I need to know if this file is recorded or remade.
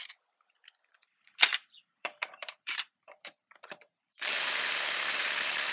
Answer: remade